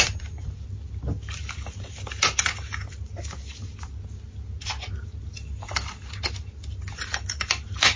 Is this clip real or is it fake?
real